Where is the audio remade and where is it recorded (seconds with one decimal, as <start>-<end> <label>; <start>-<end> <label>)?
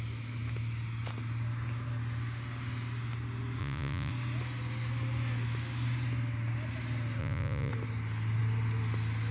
0.0-3.6 recorded; 3.6-4.1 remade; 4.1-7.2 recorded; 7.2-7.7 remade; 7.7-9.3 recorded